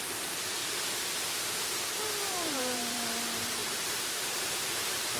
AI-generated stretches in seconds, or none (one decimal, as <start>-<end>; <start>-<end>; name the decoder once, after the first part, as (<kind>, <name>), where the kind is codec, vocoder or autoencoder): 0.0-0.6 (vocoder, BigVGAN v2); 1.7-5.2